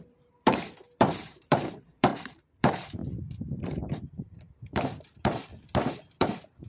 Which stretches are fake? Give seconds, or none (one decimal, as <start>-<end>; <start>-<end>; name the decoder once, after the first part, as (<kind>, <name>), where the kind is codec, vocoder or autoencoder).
0.0-2.1 (vocoder, BigVGAN v2); 2.6-3.0; 3.6-5.5; 6.2-6.7

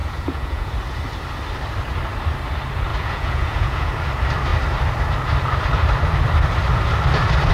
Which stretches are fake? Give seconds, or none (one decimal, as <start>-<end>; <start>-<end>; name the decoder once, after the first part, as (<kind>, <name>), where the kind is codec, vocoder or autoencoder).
0.0-0.7 (vocoder, Vocos); 2.9-3.9

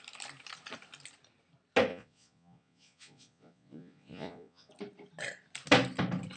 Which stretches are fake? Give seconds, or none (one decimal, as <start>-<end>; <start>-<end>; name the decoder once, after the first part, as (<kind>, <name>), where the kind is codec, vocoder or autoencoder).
1.9-4.7 (vocoder, Vocos)

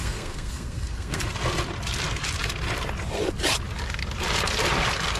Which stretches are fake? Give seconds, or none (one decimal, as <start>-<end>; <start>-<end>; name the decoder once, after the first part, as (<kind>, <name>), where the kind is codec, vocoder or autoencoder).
0.0-1.2 (codec, SNAC)